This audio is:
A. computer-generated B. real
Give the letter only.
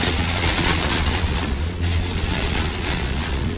A